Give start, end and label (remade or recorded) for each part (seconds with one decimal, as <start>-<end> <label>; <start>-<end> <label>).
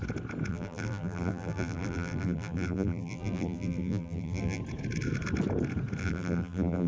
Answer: 0.0-0.5 recorded; 0.5-4.6 remade; 4.6-6.0 recorded; 6.0-6.9 remade